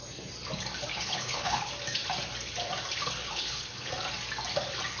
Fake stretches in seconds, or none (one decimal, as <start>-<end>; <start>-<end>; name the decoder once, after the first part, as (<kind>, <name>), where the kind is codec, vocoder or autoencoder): 0.9-1.7 (codec, HILCodec); 3.2-3.9